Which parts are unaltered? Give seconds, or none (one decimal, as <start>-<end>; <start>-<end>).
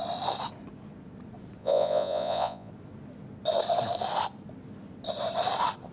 0.0-1.6; 2.7-5.9